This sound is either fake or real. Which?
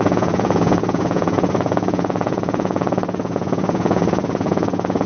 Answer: fake